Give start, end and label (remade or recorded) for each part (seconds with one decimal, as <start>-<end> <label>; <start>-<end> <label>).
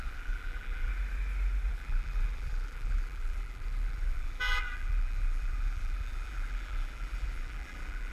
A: 0.0-0.9 remade; 0.9-1.7 recorded; 1.7-8.1 remade